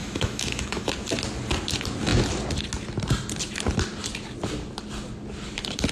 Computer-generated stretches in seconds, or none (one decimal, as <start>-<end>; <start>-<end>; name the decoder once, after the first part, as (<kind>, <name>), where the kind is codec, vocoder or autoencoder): 0.0-0.9 (autoencoder, DAC-VAE)